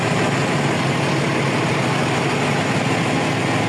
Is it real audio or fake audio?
real